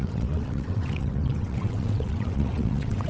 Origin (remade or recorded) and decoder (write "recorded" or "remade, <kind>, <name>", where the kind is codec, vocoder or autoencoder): remade, vocoder, WaveNeXt